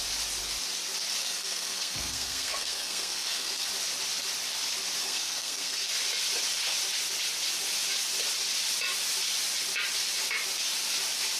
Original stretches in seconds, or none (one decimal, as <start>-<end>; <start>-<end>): 0.0-1.2; 3.7-5.0; 5.9-11.4